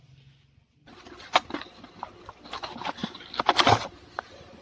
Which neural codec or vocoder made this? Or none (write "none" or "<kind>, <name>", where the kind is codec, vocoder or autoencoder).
none